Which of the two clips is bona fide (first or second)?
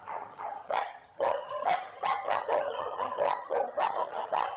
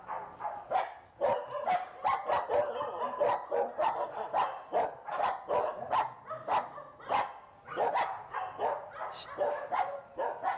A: second